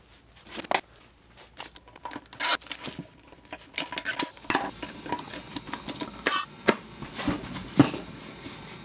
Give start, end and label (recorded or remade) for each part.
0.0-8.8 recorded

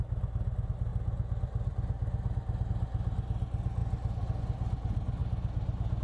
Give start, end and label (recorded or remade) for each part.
0.0-6.0 recorded

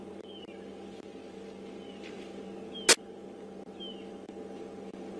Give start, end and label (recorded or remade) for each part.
0.0-5.2 recorded

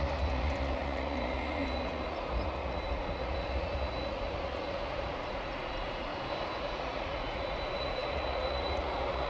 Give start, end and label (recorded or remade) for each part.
0.0-6.1 remade; 6.1-6.6 recorded; 6.6-9.3 remade